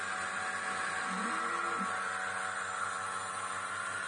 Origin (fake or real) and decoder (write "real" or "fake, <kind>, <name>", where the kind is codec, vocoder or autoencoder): real